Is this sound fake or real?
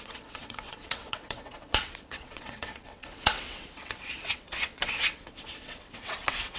fake